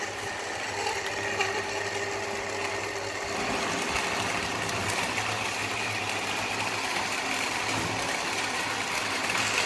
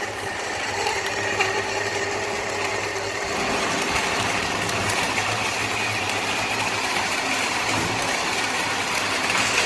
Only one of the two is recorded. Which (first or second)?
first